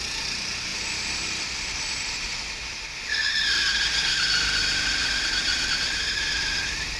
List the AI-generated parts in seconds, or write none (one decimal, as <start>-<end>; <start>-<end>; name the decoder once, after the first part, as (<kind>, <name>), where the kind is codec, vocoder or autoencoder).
4.6-6.5 (vocoder, BigVGAN v2)